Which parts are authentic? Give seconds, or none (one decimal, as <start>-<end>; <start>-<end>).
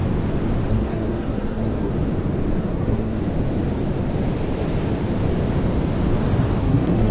0.0-0.7; 1.9-2.6; 3.2-6.6